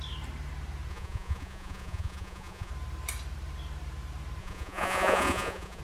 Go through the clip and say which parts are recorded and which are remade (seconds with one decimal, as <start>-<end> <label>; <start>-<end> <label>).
0.0-0.9 recorded; 0.9-2.7 remade; 2.7-4.4 recorded; 4.4-5.8 remade